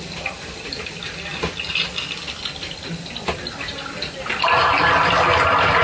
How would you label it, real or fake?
real